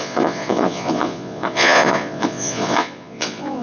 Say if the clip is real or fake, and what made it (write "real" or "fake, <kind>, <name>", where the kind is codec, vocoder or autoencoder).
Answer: fake, vocoder, Vocos